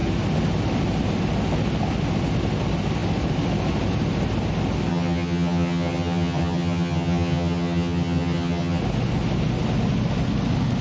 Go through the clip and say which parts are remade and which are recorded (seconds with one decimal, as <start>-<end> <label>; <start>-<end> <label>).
0.0-4.9 recorded; 4.9-8.8 remade; 8.8-10.8 recorded